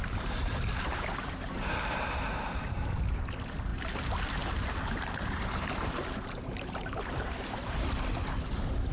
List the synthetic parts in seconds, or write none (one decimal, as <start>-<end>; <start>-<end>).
0.0-2.9; 3.7-7.9